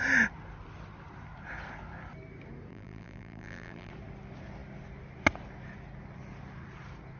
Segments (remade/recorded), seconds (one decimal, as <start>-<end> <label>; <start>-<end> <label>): 0.0-2.7 recorded; 2.7-3.9 remade; 3.9-7.2 recorded